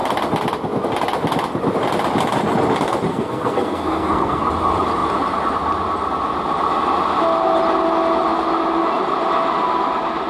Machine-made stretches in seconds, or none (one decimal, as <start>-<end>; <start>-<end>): 3.1-4.5